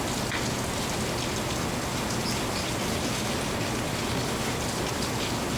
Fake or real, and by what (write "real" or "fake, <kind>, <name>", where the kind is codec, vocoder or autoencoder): real